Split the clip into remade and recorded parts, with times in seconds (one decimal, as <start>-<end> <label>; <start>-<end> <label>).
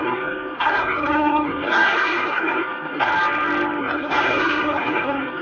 0.0-3.1 remade; 3.1-3.8 recorded; 3.8-5.4 remade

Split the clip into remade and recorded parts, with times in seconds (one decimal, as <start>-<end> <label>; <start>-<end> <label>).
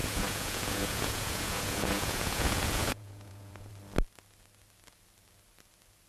0.0-3.7 remade; 3.7-6.1 recorded